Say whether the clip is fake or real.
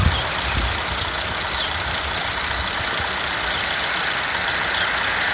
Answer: real